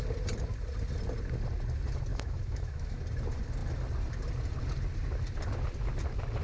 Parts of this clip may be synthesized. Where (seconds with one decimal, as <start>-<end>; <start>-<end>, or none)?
2.1-3.0